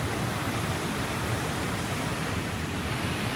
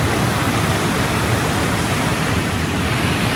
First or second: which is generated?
first